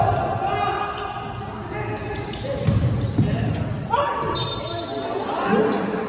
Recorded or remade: recorded